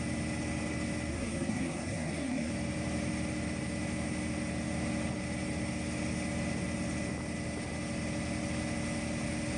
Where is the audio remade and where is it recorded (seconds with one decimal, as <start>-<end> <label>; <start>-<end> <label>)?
0.0-1.1 recorded; 1.1-2.5 remade; 2.5-9.6 recorded